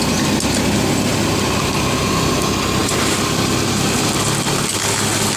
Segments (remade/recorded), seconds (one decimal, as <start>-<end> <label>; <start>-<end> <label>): 0.0-5.4 recorded